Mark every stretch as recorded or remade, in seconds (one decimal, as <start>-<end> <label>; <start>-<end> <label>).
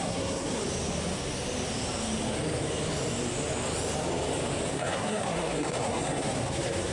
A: 0.0-0.6 remade; 0.6-4.7 recorded; 4.7-6.9 remade